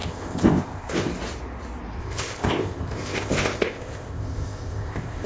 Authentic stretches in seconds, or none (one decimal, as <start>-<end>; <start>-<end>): 1.1-2.0